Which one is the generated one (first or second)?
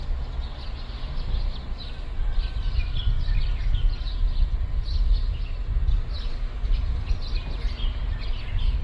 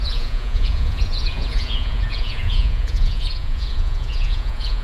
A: second